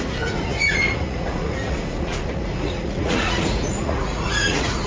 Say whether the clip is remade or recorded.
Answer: remade